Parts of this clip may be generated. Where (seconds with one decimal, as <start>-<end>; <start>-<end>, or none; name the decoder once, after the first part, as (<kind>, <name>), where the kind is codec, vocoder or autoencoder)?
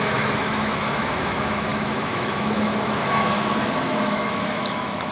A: 0.0-5.1 (autoencoder, DAC-VAE)